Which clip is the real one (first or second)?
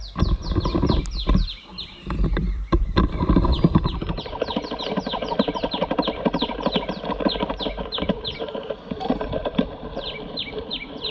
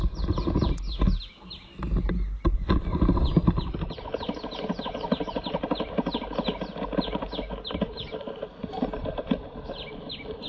second